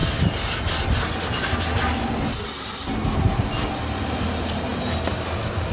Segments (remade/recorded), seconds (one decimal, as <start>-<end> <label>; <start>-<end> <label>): 0.0-5.7 recorded